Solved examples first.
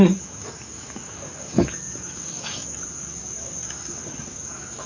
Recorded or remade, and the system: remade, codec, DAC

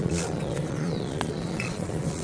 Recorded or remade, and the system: remade, vocoder, Vocos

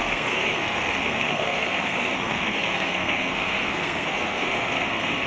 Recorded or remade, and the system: remade, codec, SNAC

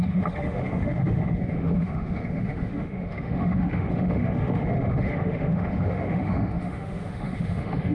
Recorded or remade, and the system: remade, autoencoder, DAC-VAE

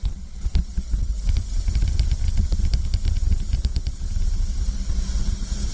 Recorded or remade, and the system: recorded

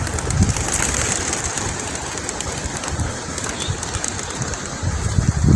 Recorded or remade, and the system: recorded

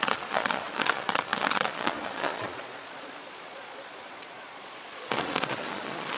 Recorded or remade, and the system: remade, vocoder, Vocos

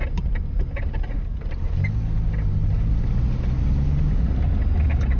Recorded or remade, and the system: recorded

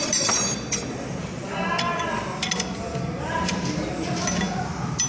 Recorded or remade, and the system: recorded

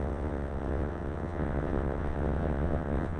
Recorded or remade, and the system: remade, vocoder, WaveNeXt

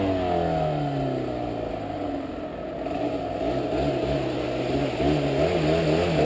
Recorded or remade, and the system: recorded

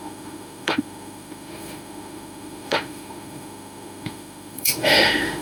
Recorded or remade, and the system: remade, autoencoder, DAC-VAE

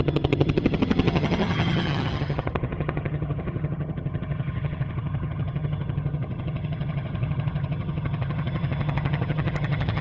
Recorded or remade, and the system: remade, vocoder, HiFi-GAN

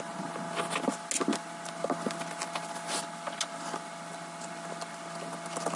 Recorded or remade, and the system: recorded